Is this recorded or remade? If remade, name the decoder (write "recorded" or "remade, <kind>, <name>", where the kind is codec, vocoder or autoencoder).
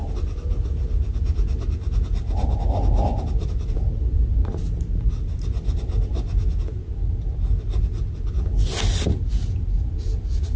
recorded